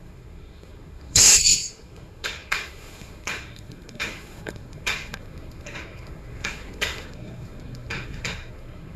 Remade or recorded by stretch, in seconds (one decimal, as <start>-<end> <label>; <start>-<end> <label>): 0.0-9.0 remade